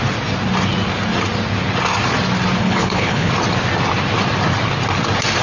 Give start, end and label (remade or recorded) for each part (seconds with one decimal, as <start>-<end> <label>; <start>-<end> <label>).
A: 0.0-2.6 recorded; 2.6-3.3 remade; 3.3-5.4 recorded